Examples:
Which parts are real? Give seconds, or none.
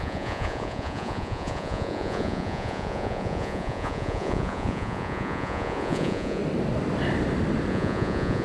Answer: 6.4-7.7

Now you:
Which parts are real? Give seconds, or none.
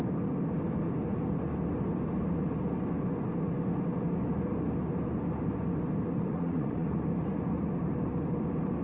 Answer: 0.0-6.3; 7.0-8.8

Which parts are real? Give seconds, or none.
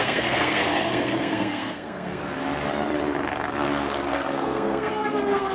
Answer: 2.2-4.1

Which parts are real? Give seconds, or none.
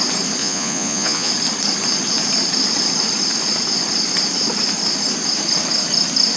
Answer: 0.0-0.4; 1.3-6.4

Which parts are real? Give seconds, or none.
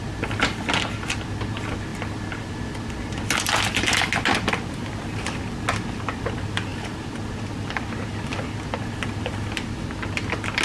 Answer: 0.0-10.6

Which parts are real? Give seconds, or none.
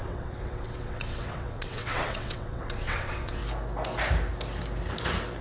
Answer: 3.4-5.4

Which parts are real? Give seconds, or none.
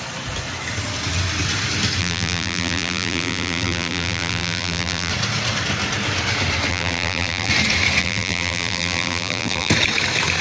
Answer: 0.0-2.0; 5.1-6.7; 7.5-8.0; 9.7-10.4